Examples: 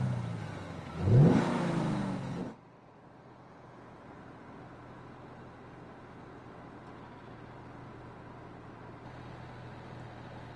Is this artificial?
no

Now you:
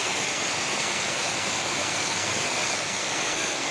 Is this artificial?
yes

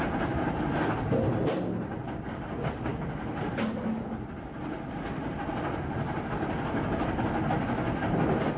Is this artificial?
no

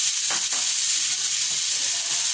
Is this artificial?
no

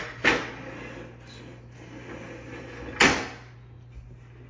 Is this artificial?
no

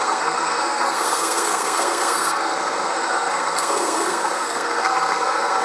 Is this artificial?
yes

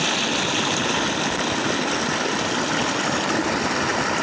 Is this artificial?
no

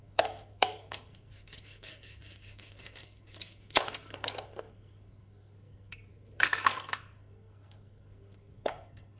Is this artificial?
yes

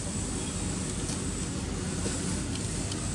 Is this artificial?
no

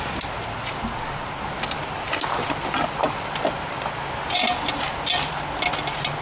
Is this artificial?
no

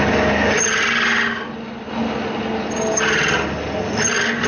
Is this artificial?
no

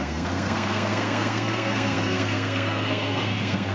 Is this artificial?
yes